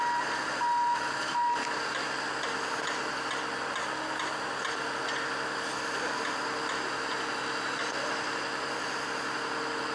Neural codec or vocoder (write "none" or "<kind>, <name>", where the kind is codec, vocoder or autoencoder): none